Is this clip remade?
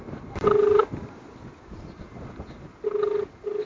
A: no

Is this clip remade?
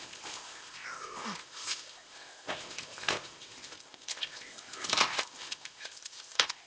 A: yes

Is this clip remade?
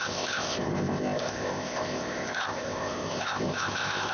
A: yes